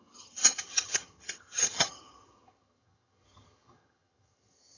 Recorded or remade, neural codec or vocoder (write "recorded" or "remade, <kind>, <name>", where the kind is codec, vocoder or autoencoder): remade, vocoder, HiFi-GAN